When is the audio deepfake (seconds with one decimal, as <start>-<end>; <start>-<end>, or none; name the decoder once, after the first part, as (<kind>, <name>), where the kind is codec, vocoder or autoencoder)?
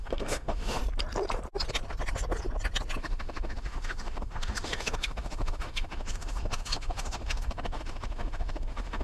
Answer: 0.0-0.8 (autoencoder, DAC-VAE); 3.0-9.0